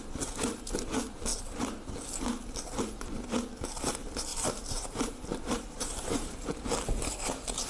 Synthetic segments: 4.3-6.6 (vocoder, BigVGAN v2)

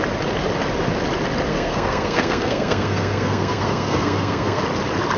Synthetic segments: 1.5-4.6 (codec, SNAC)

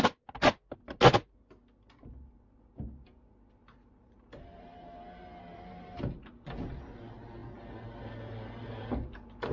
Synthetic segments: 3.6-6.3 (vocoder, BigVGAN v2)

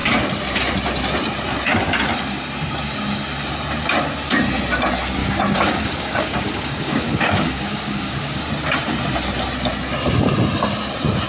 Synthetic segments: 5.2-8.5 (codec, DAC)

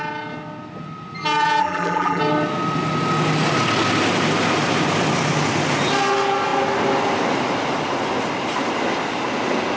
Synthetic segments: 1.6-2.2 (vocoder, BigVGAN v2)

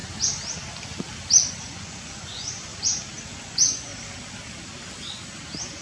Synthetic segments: 1.5-2.7 (vocoder, Vocos); 3.4-3.9